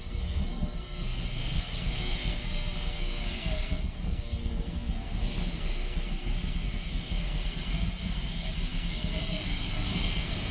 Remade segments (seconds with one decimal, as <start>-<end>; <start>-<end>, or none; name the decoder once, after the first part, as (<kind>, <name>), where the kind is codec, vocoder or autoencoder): 0.0-10.5 (codec, SNAC)